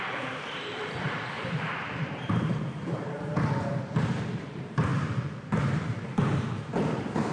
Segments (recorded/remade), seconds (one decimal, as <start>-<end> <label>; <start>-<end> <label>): 0.0-7.3 remade

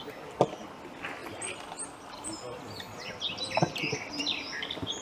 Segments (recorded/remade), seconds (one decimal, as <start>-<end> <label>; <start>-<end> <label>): 0.0-5.0 recorded

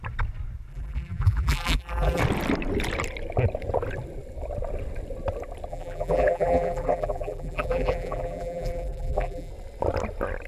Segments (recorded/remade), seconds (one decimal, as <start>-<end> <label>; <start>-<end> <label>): 0.0-0.7 recorded; 0.7-2.2 remade; 2.2-5.7 recorded; 5.7-9.5 remade; 9.5-10.5 recorded

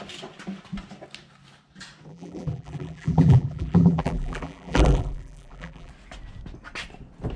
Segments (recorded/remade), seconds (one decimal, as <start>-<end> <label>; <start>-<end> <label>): 0.0-2.1 recorded; 2.1-5.9 remade; 5.9-7.4 recorded

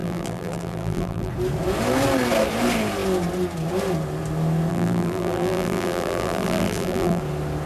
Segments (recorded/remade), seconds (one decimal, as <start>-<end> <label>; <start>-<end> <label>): 0.0-1.3 remade; 1.3-4.7 recorded; 4.7-7.2 remade; 7.2-7.7 recorded

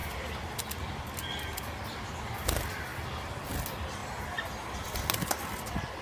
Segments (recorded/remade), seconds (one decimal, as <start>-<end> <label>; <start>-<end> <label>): 0.0-6.0 recorded